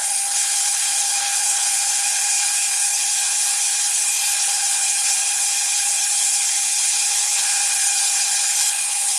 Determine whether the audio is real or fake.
fake